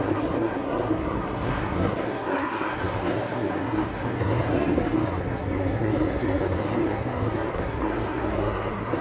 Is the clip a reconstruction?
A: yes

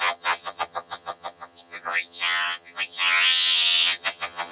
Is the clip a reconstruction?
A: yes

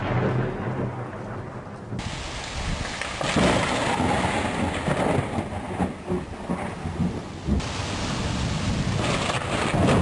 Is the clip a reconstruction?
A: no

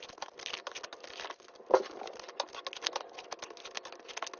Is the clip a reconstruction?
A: no